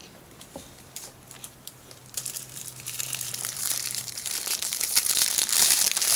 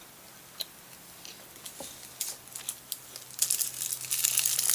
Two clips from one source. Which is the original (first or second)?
second